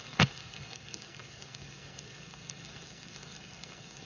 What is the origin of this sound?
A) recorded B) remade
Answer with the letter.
B